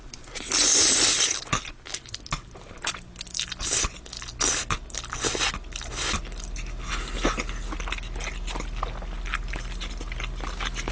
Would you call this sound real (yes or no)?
yes